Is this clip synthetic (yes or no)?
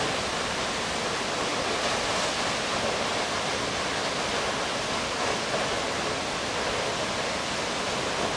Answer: no